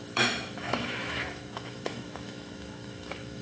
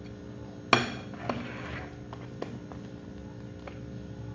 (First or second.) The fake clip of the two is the first